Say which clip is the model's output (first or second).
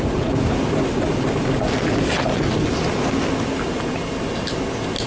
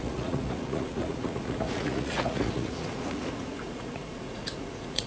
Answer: second